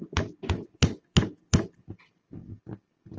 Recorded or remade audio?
remade